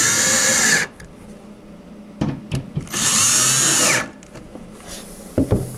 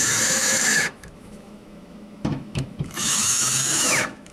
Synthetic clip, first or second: second